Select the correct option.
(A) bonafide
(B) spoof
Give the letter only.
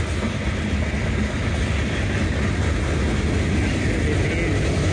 A